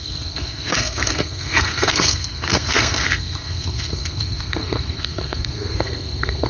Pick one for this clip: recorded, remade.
remade